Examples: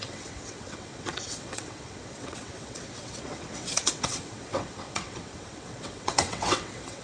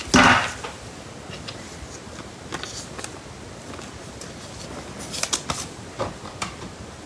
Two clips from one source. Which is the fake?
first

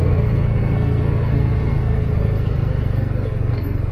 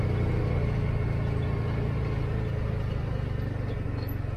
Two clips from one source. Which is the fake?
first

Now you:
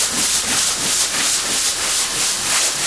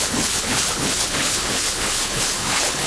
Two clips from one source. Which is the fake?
second